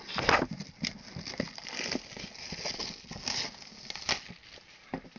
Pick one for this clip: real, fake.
real